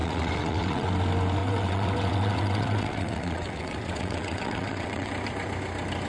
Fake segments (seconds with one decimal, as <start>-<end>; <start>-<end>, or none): 0.0-0.9; 1.4-5.1